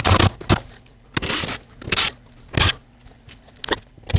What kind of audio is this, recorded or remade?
recorded